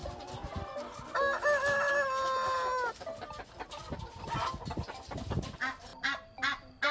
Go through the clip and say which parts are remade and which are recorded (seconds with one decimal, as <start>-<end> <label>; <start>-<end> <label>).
0.0-6.9 recorded